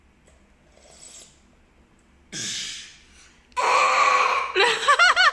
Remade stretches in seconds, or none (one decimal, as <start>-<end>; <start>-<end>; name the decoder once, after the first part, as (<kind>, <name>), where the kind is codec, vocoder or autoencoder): none